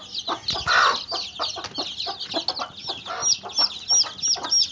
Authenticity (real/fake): real